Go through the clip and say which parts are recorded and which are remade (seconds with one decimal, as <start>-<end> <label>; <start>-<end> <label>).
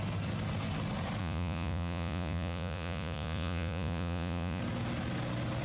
0.0-1.2 recorded; 1.2-4.6 remade; 4.6-5.6 recorded